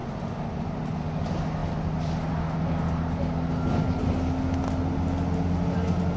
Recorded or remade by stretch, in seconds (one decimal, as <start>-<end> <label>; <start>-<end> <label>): 0.0-6.2 recorded